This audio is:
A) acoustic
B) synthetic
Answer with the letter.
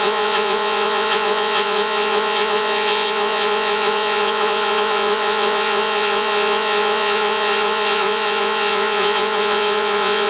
B